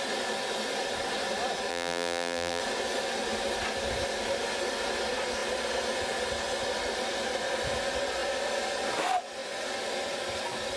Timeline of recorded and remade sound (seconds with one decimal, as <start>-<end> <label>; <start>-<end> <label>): 0.0-1.7 recorded; 1.7-2.6 remade; 2.6-10.8 recorded

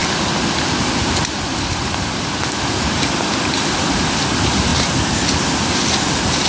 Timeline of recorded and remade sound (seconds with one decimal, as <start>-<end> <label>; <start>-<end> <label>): 0.0-6.5 recorded

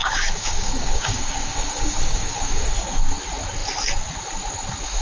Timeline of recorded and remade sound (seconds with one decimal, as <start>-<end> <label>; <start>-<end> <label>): 0.0-3.0 remade; 3.0-5.0 recorded

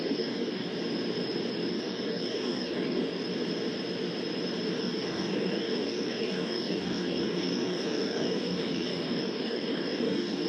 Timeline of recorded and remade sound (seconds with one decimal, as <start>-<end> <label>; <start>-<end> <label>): 0.0-0.7 remade; 0.7-1.7 recorded; 1.7-3.0 remade; 3.0-4.8 recorded; 4.8-10.5 remade

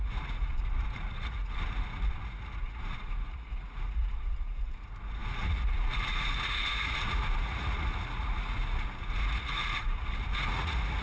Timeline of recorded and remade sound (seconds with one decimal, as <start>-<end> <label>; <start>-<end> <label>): 0.0-11.0 remade